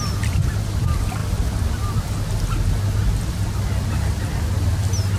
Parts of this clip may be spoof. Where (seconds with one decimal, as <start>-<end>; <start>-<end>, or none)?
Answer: none